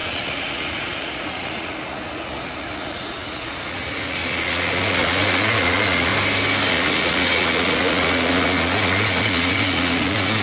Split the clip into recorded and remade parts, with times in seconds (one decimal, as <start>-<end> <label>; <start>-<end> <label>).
0.0-6.1 remade; 6.1-6.7 recorded; 6.7-10.4 remade